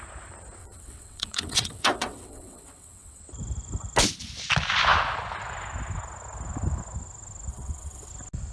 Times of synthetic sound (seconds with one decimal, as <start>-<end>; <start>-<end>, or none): 0.6-3.2; 7.5-8.1